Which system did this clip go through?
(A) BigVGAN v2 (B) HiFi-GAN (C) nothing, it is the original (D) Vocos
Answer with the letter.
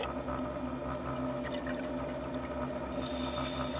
C